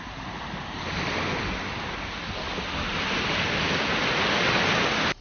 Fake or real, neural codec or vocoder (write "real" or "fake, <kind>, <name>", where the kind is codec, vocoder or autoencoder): real